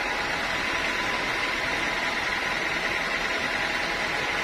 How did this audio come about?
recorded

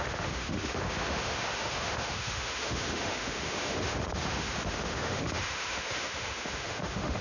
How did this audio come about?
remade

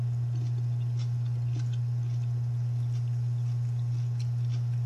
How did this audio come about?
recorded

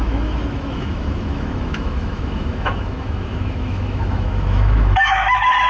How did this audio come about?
remade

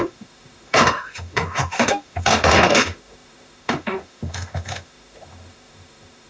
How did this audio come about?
remade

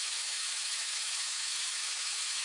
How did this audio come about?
remade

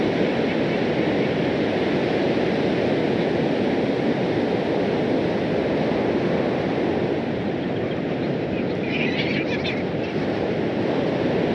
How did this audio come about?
recorded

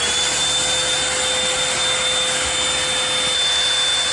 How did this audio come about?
recorded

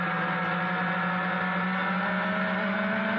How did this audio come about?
recorded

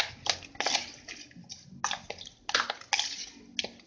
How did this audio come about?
recorded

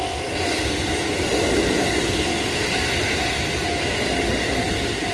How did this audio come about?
recorded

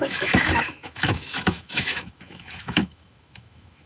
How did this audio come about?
remade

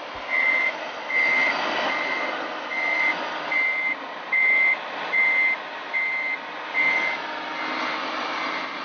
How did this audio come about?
recorded